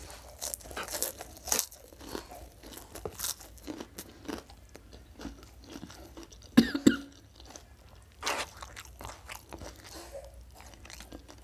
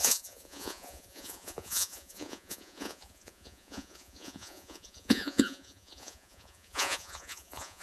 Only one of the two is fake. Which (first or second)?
second